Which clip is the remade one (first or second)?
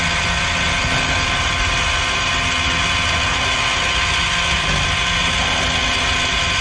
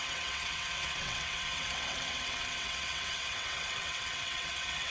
second